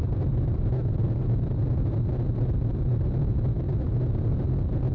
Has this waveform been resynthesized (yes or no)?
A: no